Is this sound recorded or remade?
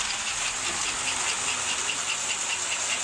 recorded